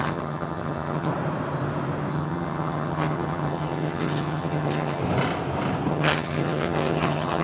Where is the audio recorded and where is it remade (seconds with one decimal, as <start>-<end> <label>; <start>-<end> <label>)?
0.0-1.1 remade; 1.1-2.1 recorded; 2.1-5.0 remade; 5.0-5.9 recorded; 5.9-7.4 remade